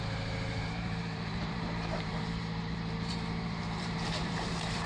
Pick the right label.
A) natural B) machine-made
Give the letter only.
B